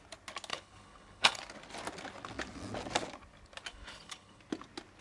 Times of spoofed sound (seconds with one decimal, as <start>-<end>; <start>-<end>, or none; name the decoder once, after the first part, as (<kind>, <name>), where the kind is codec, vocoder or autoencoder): 0.5-1.4 (codec, HILCodec); 3.7-4.4